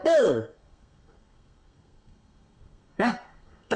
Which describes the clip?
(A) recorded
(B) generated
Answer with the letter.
B